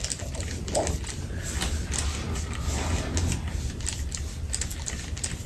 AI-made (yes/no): no